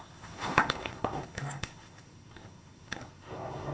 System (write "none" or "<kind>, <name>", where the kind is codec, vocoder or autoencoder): codec, SNAC